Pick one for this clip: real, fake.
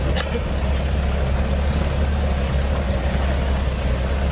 real